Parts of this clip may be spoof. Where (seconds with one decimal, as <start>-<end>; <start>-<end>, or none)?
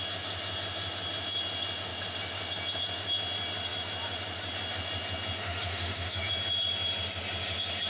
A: 5.4-6.3